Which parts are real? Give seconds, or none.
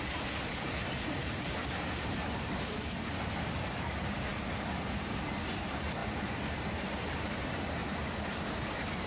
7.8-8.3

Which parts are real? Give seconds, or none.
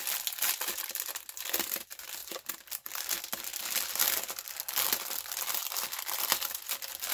0.0-7.1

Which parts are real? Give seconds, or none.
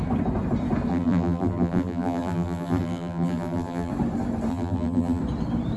0.0-0.9; 3.9-4.5; 5.2-5.8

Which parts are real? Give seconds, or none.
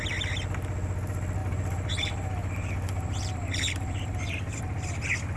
0.0-1.4; 4.6-5.4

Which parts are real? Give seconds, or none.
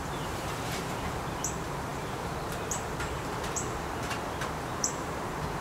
none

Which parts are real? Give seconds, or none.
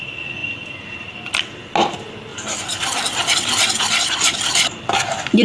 0.0-0.4; 1.4-2.3; 4.9-5.4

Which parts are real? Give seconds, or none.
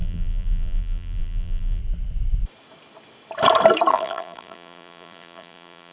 1.8-3.9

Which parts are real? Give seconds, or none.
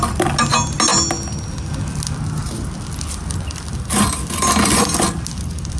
0.0-5.8